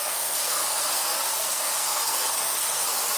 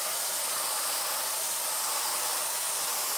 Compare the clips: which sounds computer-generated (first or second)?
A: first